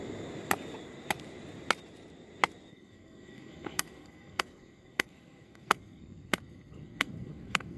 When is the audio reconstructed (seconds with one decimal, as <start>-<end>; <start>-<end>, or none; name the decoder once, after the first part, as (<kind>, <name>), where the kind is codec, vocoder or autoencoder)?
2.7-7.8 (codec, SNAC)